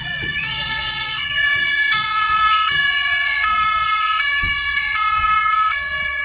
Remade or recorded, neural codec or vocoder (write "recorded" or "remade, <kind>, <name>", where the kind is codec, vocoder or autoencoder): remade, vocoder, Vocos